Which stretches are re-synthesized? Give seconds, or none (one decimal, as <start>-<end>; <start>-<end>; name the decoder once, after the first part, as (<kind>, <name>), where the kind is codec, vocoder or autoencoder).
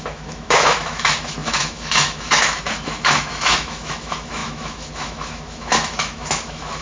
0.0-6.8 (autoencoder, DAC-VAE)